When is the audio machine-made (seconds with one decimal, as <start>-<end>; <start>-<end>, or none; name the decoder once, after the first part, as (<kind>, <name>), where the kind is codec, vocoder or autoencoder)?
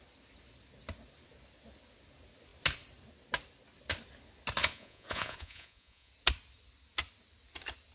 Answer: 4.6-6.1 (vocoder, Vocos)